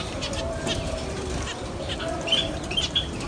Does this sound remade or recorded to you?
recorded